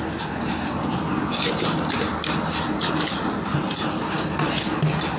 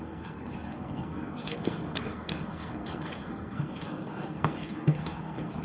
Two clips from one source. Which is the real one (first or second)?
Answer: first